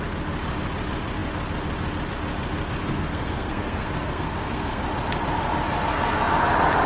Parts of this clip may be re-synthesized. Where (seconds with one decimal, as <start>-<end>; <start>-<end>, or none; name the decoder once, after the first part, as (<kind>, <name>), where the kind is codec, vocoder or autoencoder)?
2.9-4.8 (codec, SNAC)